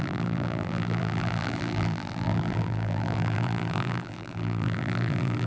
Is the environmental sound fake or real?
fake